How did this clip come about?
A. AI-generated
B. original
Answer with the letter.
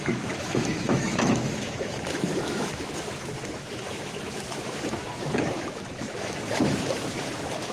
A